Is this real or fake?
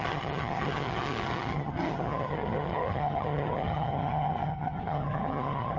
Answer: fake